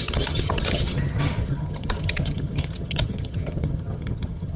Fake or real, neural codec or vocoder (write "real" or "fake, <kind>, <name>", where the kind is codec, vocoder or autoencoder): fake, vocoder, HiFi-GAN